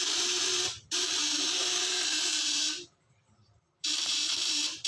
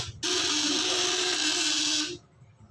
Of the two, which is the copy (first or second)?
first